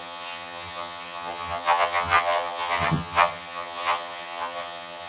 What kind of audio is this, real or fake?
fake